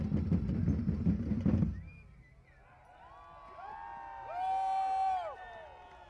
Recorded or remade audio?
recorded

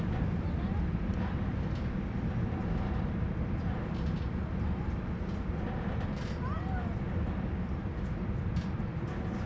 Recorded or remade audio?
recorded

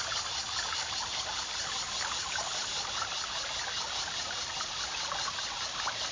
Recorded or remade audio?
recorded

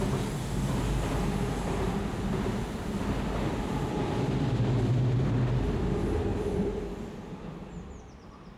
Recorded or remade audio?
recorded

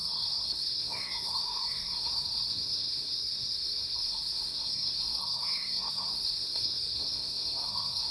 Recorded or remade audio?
remade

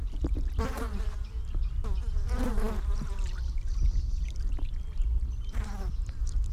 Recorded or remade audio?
recorded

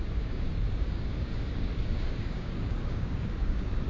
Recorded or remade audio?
remade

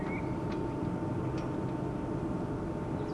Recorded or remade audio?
recorded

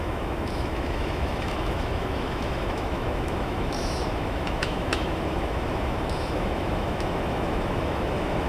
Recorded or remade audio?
remade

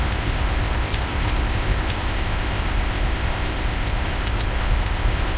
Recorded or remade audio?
remade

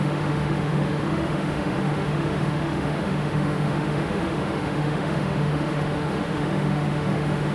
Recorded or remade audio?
remade